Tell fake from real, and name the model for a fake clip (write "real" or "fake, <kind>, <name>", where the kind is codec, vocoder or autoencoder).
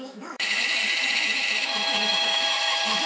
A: fake, autoencoder, DAC-VAE